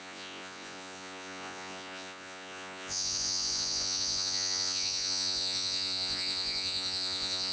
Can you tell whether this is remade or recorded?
remade